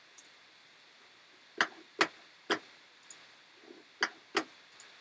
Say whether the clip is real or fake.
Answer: real